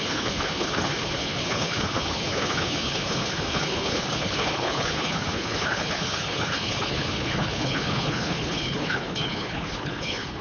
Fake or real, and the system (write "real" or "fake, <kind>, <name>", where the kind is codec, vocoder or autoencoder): fake, codec, HILCodec